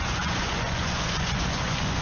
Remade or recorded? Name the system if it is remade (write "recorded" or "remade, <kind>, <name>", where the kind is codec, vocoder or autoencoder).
remade, vocoder, Vocos